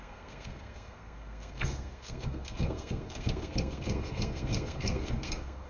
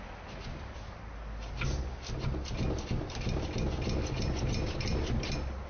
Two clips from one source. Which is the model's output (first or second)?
first